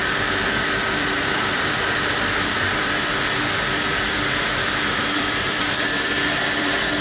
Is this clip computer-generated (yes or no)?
yes